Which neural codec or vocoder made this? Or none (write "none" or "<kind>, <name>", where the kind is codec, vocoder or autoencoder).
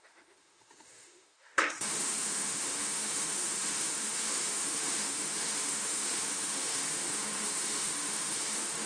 autoencoder, DAC-VAE